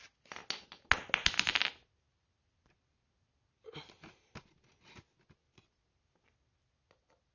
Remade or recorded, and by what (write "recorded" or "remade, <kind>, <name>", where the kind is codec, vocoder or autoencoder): recorded